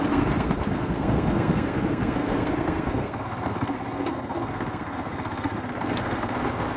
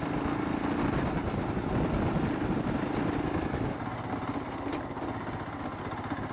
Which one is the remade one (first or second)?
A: first